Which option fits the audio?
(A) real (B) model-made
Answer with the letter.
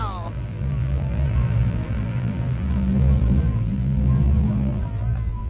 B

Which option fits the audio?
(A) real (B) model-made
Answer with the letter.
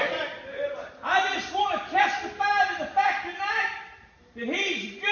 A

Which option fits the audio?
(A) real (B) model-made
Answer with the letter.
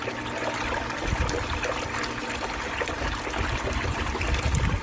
A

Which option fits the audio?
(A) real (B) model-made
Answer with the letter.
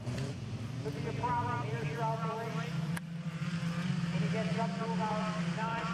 B